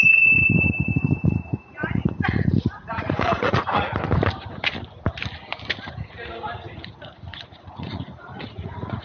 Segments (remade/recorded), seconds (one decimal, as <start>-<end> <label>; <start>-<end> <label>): 0.0-3.9 remade; 3.9-6.9 recorded; 6.9-9.0 remade